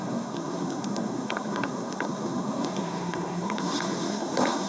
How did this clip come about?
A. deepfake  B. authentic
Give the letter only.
A